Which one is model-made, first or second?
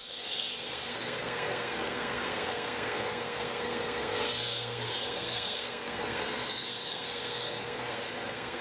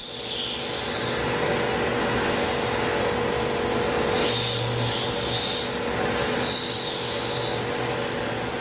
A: first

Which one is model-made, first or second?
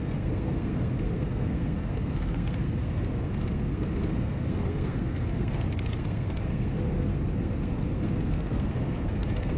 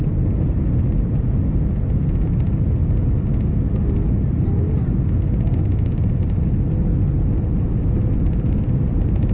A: first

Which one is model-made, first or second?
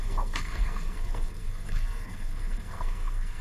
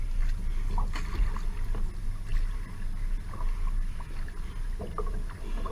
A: first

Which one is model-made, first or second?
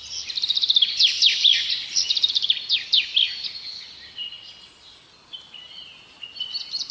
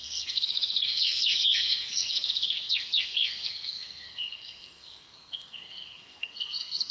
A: second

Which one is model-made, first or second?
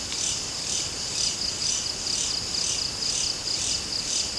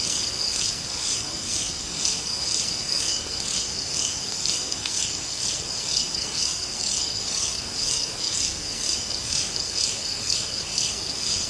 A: second